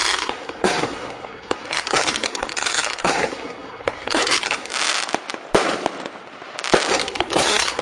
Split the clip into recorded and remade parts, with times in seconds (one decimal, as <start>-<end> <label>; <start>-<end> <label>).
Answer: 0.0-4.7 remade; 4.7-6.9 recorded; 6.9-7.8 remade